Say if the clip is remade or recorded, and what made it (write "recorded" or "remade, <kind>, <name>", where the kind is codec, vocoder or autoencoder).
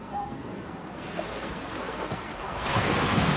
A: remade, codec, SNAC